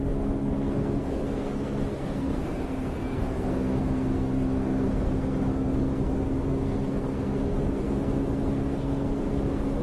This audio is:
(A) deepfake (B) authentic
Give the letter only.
A